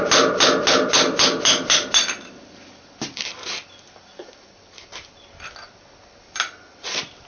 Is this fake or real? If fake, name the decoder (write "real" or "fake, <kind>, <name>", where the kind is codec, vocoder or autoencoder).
real